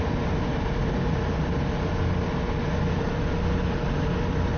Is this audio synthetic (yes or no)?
no